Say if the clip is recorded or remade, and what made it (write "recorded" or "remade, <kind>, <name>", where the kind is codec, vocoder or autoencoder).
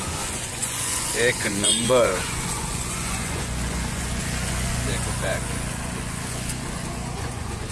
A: remade, vocoder, Vocos